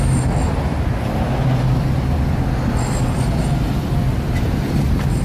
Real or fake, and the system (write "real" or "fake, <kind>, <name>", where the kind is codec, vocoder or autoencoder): real